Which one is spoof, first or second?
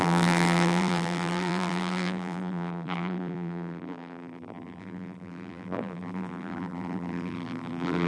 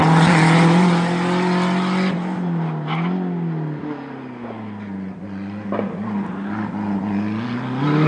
first